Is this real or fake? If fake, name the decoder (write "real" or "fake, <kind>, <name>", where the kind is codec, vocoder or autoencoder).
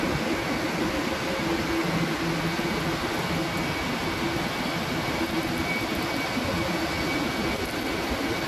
real